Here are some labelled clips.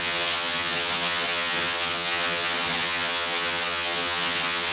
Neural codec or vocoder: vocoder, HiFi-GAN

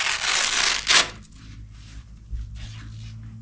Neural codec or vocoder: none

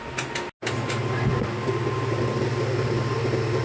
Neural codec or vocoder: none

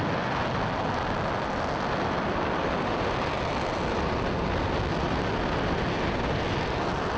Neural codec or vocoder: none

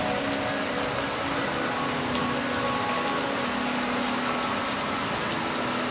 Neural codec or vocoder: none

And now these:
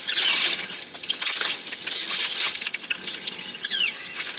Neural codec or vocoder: vocoder, HiFi-GAN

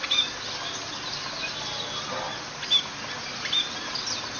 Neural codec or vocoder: none